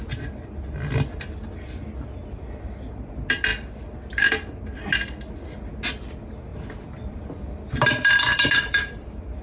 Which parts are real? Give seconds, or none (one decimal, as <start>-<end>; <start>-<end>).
0.0-6.5